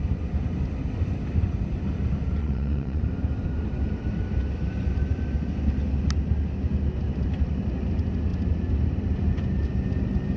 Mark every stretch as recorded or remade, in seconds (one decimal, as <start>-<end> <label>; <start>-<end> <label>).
0.0-2.4 recorded; 2.4-3.0 remade; 3.0-10.4 recorded